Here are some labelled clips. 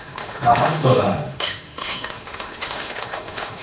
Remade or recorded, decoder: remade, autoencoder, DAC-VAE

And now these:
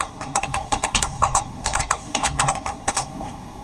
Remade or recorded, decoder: remade, codec, SNAC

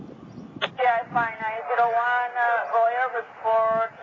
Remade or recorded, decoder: recorded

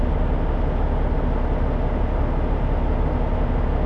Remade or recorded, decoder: recorded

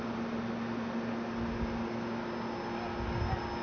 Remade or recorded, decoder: recorded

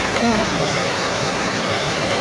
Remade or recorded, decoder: remade, codec, SNAC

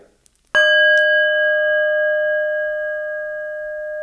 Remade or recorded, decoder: recorded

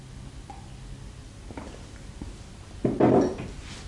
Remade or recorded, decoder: recorded